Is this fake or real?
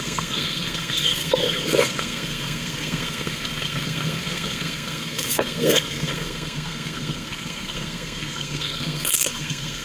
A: fake